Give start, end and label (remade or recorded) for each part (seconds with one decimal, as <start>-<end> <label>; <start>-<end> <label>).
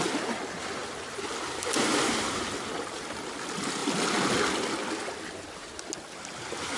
0.0-6.8 recorded